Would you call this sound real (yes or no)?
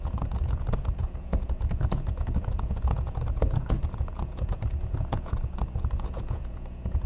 no